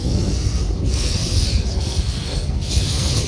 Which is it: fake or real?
fake